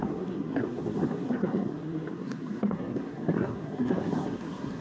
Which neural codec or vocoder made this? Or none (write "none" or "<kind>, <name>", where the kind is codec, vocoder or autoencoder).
codec, SNAC